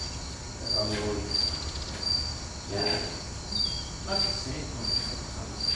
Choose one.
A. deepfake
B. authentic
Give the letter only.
B